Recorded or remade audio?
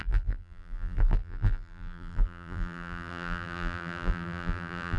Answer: remade